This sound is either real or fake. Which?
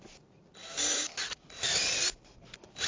real